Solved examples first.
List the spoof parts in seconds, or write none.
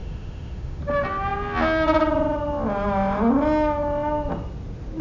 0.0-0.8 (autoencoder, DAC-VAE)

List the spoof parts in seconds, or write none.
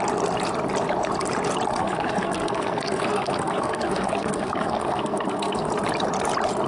1.7-5.7 (codec, SNAC)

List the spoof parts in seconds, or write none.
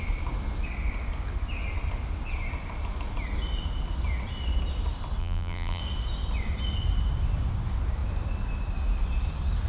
5.2-5.8 (vocoder, BigVGAN v2)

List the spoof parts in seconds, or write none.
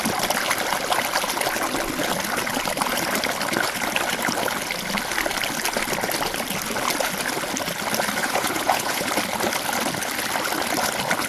8.2-9.1 (vocoder, Vocos)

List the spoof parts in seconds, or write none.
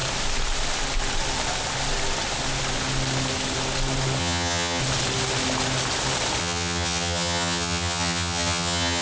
4.2-4.8 (vocoder, HiFi-GAN); 6.4-9.0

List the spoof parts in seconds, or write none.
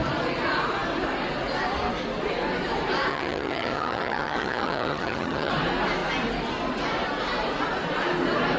3.1-5.5 (vocoder, HiFi-GAN)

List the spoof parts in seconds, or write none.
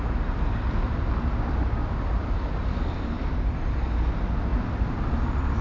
none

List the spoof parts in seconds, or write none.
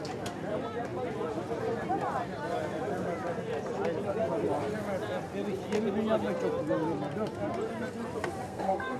8.5-9.0 (codec, SNAC)